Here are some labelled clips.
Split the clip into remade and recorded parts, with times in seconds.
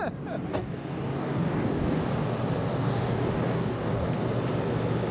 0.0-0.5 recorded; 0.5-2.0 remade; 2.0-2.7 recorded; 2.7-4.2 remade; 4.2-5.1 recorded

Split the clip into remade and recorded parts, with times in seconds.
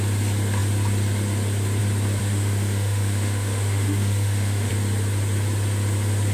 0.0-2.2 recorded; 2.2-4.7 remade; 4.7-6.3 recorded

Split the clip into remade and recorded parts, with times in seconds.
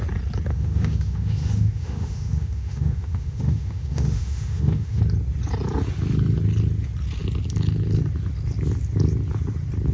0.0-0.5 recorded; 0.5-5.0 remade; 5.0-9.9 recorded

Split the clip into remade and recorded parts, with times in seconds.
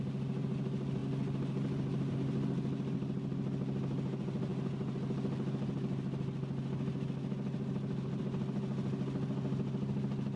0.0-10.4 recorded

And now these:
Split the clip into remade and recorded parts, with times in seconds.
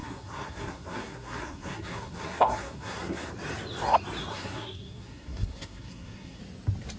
0.0-3.3 remade; 3.3-4.3 recorded; 4.3-6.4 remade; 6.4-7.0 recorded